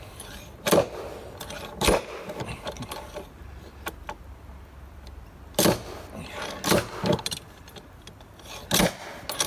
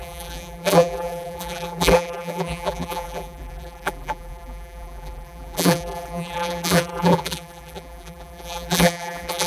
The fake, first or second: second